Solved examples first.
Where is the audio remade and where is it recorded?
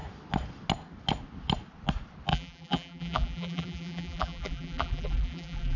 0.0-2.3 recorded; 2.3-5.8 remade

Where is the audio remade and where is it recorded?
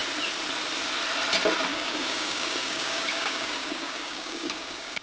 0.0-1.7 recorded; 1.7-5.0 remade